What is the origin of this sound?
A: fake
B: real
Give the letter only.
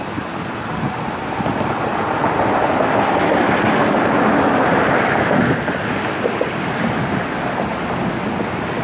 B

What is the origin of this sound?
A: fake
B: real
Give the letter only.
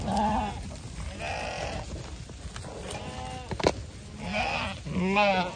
B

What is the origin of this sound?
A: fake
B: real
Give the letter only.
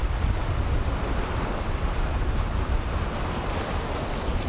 B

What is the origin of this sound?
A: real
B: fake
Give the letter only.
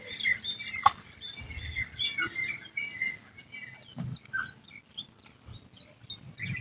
A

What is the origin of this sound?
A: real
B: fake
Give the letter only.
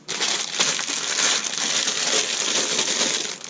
A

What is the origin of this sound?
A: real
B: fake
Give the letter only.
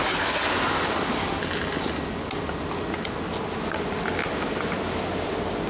A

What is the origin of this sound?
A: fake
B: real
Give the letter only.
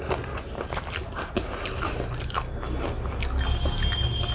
B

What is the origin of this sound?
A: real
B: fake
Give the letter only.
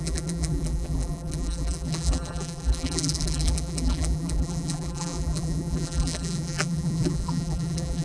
B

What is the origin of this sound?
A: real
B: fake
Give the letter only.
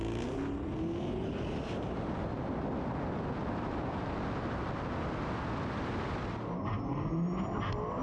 A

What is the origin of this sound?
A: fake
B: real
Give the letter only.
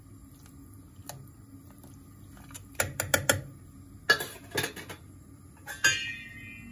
B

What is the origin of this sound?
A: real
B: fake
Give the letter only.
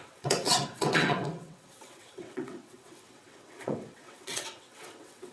B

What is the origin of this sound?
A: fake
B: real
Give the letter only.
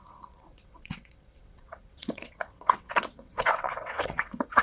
A